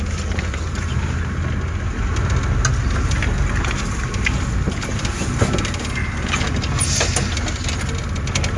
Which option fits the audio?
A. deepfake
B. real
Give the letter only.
B